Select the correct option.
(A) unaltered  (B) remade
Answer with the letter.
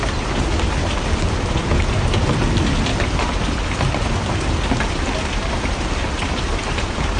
A